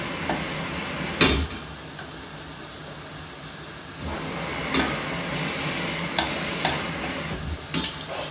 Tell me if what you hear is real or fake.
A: real